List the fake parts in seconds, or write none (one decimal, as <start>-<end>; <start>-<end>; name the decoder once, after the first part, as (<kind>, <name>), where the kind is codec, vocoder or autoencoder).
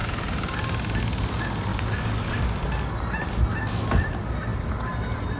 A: 1.7-2.4 (codec, DAC)